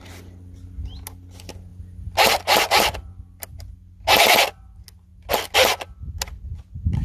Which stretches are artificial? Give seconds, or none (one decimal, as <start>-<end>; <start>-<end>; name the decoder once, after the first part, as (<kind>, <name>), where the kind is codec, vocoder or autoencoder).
none